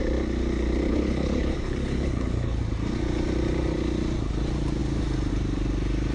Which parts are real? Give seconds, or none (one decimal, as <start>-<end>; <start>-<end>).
0.0-0.9; 2.6-6.1